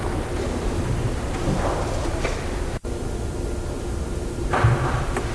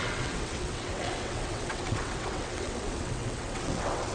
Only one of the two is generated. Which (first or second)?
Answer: second